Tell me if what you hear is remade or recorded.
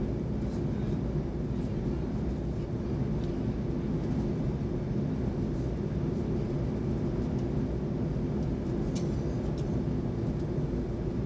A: recorded